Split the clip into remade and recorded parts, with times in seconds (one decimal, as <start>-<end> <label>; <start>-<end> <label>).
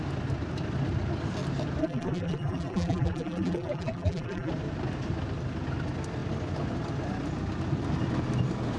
0.0-1.8 recorded; 1.8-4.5 remade; 4.5-8.8 recorded